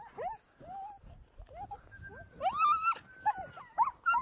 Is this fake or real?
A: real